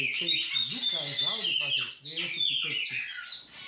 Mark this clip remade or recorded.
recorded